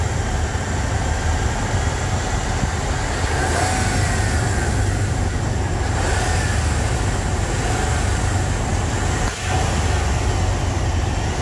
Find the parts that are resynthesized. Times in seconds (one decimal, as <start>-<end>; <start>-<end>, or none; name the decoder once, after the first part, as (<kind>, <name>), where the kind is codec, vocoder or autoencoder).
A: none